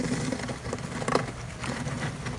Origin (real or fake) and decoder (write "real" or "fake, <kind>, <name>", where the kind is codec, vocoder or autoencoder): real